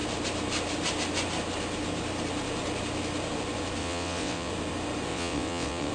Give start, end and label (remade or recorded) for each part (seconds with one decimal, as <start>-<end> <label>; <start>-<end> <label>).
0.0-3.8 recorded; 3.8-4.5 remade; 4.5-5.1 recorded; 5.1-5.9 remade